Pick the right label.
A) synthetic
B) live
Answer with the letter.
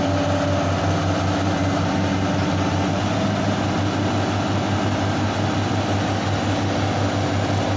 B